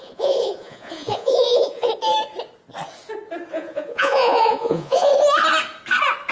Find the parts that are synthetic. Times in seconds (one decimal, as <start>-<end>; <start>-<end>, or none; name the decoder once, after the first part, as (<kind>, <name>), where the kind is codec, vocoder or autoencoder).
0.0-1.9 (vocoder, Vocos); 3.5-5.1